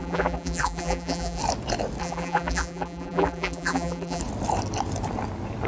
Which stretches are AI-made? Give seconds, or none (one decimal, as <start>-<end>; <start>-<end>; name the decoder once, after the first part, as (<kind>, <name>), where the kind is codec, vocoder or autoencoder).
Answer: 0.0-1.4 (vocoder, BigVGAN v2); 2.0-4.2